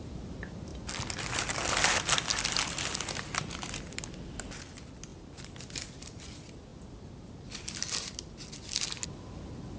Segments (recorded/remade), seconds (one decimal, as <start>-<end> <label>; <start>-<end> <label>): 0.0-9.8 recorded